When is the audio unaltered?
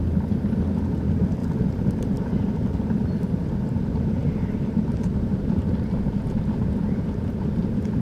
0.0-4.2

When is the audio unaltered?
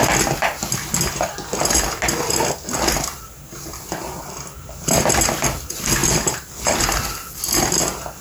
0.0-8.2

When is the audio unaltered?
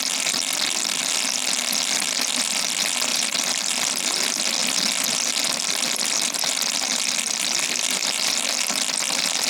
0.0-3.1; 4.0-6.9; 8.3-9.5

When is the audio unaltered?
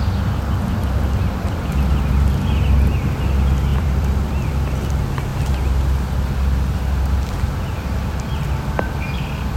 0.0-3.7; 4.5-9.6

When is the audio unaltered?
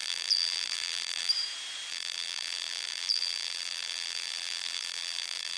1.3-1.9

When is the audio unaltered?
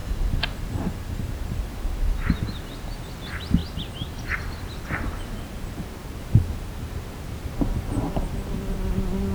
0.0-9.3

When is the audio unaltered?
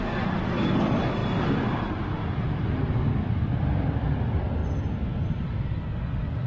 0.0-6.5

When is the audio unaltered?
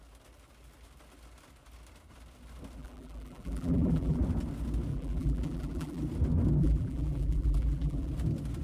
0.0-2.8; 4.2-4.9; 6.0-6.6; 8.1-8.6